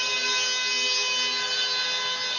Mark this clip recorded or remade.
recorded